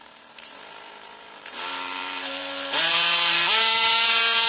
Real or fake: fake